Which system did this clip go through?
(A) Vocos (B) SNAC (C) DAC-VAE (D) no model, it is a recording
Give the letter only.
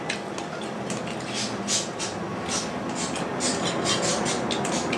D